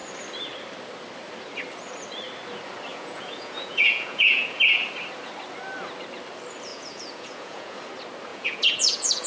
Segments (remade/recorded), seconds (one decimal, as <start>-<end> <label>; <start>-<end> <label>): 0.0-2.9 recorded; 2.9-4.6 remade; 4.6-6.7 recorded; 6.7-7.8 remade; 7.8-8.3 recorded; 8.3-9.3 remade